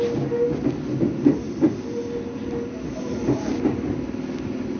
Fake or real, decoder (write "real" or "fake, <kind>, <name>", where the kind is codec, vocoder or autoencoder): real